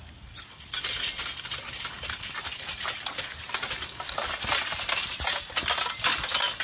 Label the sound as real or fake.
real